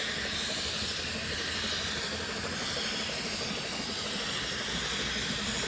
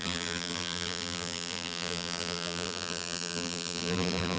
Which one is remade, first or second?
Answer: second